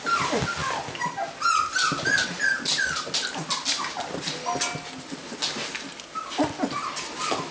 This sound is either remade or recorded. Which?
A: recorded